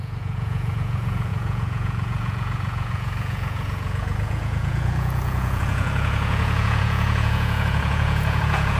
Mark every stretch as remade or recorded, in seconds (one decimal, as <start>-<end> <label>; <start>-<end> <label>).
0.0-8.8 remade